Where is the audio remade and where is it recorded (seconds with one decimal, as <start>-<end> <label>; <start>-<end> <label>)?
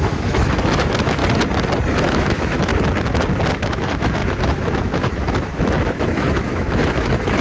0.0-1.2 remade; 1.2-1.9 recorded; 1.9-2.7 remade; 2.7-3.5 recorded; 3.5-7.4 remade